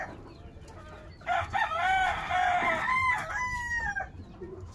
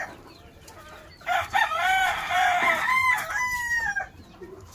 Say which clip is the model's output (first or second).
second